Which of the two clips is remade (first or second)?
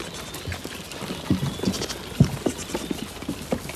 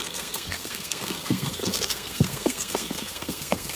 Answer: second